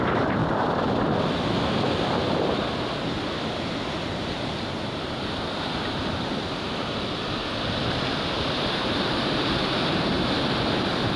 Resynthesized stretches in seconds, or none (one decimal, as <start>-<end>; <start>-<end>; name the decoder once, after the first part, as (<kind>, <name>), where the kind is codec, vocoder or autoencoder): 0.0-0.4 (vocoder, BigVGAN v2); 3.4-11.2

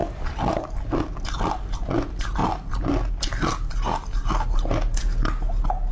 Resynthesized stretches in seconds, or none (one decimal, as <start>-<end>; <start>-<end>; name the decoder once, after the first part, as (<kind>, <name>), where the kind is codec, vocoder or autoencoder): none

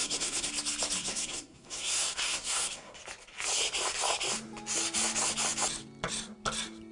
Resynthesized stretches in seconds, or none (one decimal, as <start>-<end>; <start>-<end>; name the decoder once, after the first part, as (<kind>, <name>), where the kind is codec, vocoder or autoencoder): 0.0-0.5 (codec, SNAC); 1.0-3.0